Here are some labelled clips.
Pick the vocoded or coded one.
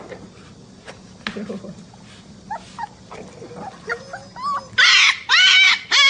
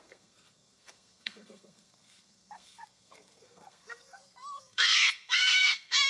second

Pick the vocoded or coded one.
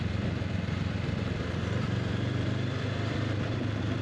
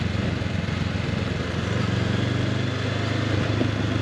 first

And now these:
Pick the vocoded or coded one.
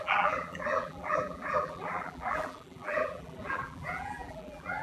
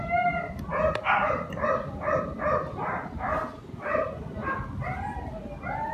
first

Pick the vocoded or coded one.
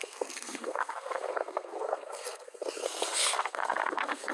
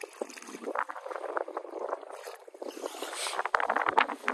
first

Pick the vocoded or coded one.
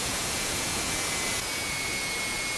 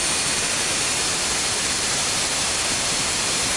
first